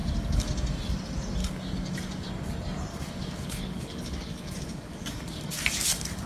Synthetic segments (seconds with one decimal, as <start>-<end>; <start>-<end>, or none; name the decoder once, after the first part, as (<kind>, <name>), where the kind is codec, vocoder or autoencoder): 0.0-0.5 (codec, DAC); 1.4-2.3; 2.9-6.3